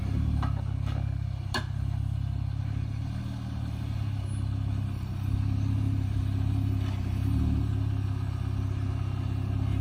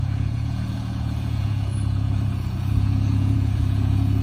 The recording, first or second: first